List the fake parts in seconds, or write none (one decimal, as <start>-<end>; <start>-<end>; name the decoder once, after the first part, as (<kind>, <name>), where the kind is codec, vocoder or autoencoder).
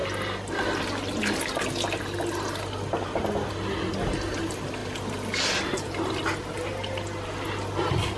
none